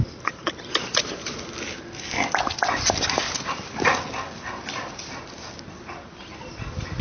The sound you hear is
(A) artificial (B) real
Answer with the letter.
B